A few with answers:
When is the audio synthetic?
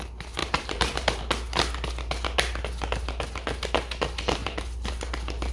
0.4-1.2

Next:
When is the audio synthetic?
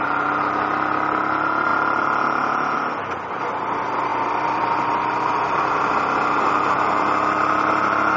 1.7-3.3; 4.1-5.7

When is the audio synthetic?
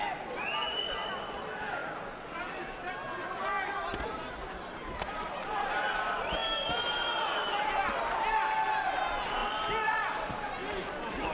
none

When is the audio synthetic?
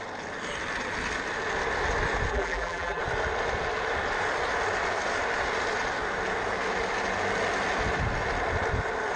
2.3-3.0